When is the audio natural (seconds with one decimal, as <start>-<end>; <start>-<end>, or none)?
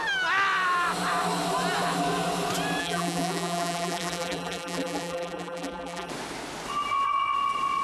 0.0-2.8; 6.1-7.8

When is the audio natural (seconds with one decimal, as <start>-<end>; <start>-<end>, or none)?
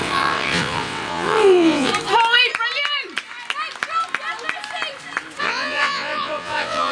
1.9-5.4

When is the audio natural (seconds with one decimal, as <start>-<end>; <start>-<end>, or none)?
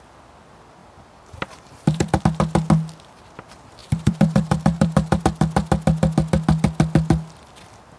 0.0-0.8; 2.2-3.8; 5.2-8.0